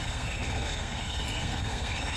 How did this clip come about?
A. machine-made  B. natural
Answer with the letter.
A